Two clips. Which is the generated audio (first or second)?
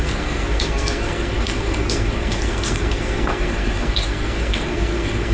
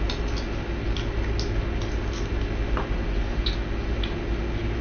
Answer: first